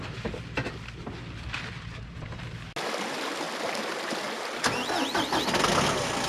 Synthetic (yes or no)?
no